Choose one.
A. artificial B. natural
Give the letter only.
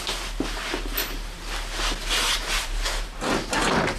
B